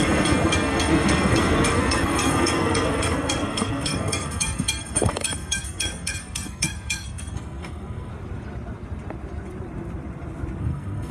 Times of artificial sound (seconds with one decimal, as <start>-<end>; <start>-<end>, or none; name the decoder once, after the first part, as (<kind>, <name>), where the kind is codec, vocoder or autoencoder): 0.0-8.1 (codec, SNAC); 10.6-11.1